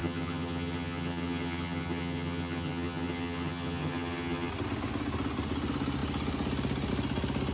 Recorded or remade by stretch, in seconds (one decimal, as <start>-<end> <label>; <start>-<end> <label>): 0.0-4.5 remade; 4.5-7.5 recorded